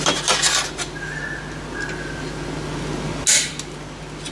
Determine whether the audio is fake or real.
real